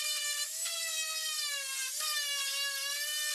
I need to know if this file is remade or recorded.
recorded